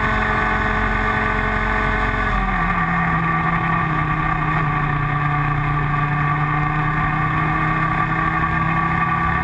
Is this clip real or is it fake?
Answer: real